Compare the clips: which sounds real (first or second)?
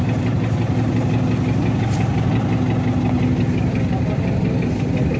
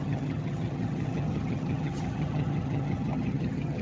first